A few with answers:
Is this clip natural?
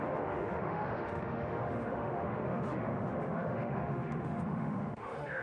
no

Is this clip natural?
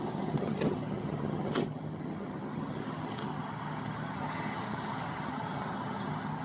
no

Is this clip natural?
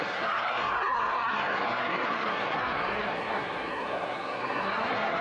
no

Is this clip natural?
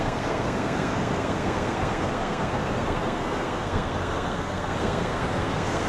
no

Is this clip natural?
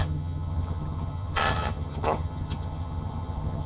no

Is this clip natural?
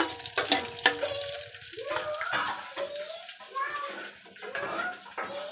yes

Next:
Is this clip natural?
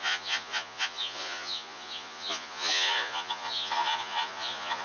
no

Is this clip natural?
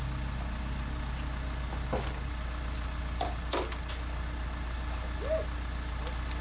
yes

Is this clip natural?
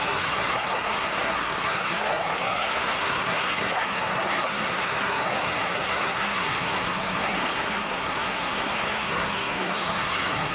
no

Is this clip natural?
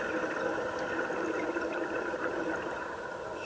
yes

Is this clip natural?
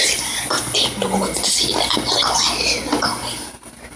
yes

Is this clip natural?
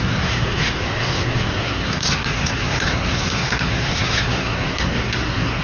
no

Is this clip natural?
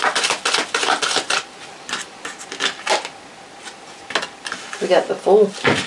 yes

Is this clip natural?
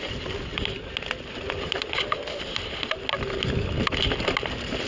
yes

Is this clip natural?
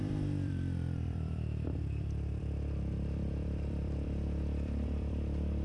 no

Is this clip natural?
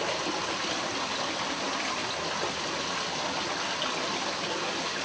yes